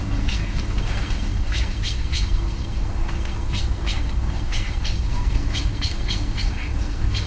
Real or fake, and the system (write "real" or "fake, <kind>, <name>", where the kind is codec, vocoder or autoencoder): fake, codec, SNAC